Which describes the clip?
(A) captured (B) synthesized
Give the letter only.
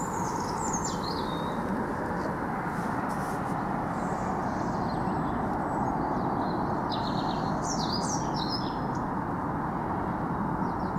A